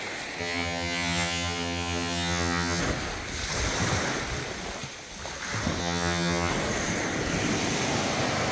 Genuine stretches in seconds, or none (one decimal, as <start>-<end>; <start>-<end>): 0.0-0.4; 2.8-5.8; 6.5-8.5